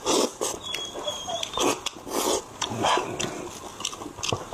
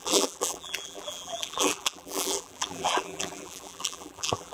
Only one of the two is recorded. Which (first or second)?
first